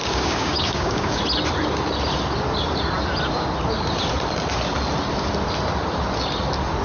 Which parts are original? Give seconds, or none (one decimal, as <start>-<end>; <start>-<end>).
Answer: 1.2-6.8